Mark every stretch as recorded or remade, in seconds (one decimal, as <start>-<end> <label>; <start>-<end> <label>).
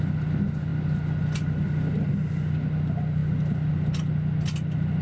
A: 0.0-5.0 recorded